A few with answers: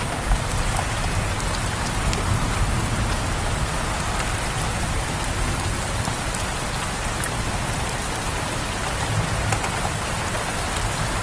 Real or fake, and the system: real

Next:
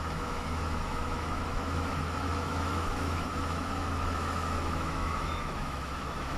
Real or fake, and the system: fake, autoencoder, DAC-VAE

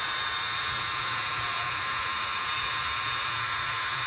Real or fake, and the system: fake, vocoder, Vocos